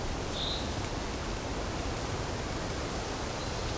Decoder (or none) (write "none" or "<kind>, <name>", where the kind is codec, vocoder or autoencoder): none